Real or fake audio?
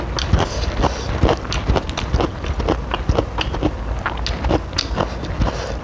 real